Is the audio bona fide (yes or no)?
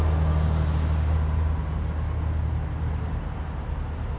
yes